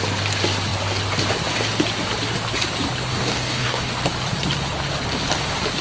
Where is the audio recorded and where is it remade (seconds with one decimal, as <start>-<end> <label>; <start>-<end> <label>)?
0.0-3.1 recorded; 3.1-3.9 remade; 3.9-5.8 recorded